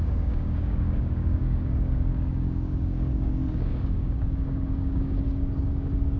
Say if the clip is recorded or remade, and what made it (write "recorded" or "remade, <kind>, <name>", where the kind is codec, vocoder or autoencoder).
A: remade, codec, DAC